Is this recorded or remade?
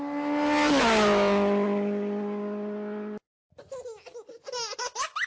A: recorded